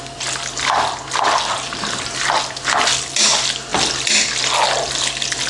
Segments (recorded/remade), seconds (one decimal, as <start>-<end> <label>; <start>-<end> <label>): 0.0-5.5 recorded